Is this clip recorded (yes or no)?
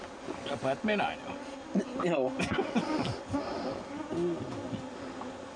yes